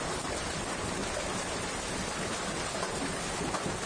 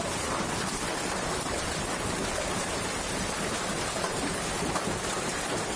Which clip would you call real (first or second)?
first